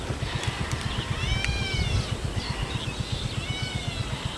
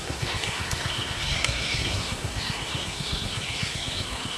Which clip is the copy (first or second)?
second